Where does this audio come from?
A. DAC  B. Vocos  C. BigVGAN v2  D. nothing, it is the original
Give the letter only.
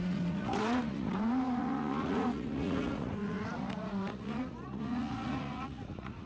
B